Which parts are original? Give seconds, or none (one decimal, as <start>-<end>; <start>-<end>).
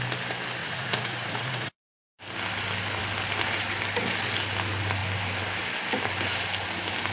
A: 0.0-0.6; 2.2-7.1